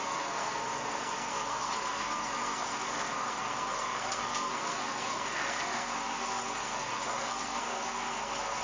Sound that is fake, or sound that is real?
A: fake